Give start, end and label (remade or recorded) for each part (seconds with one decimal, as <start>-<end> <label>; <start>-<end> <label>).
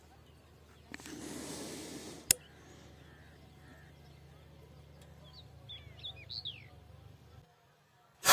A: 0.0-8.3 recorded